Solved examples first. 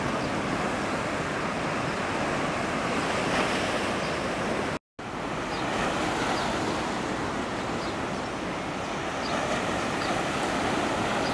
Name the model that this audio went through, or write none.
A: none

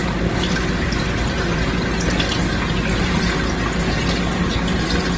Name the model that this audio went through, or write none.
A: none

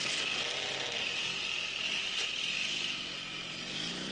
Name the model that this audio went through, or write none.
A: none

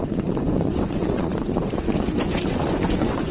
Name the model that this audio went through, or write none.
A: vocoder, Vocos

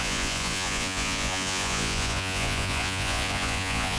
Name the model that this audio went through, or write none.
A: vocoder, Vocos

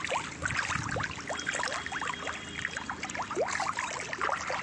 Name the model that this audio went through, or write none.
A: none